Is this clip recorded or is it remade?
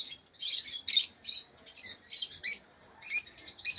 recorded